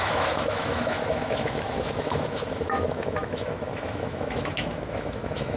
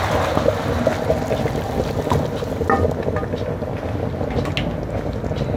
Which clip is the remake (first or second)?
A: first